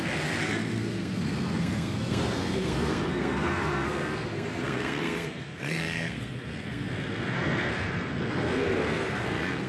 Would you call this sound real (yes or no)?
no